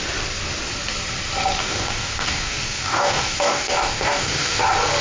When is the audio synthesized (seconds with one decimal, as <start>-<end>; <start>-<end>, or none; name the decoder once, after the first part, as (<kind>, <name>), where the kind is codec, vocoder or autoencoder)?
1.6-4.6 (codec, DAC)